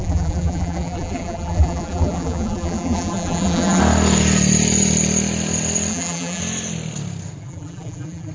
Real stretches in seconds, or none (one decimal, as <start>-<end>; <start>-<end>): 3.8-5.9; 6.4-7.4